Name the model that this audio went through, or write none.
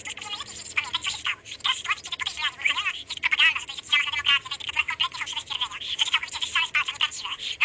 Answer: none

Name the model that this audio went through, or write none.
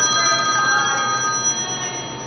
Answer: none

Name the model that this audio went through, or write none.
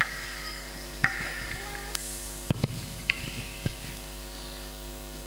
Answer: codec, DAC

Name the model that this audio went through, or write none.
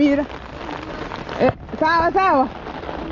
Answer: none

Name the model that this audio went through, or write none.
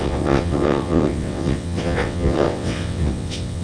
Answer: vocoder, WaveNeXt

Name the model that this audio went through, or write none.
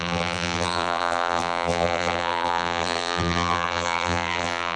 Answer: vocoder, BigVGAN v2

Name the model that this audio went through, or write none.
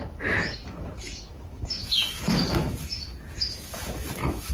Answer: autoencoder, DAC-VAE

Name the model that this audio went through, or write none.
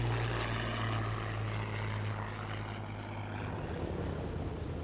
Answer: none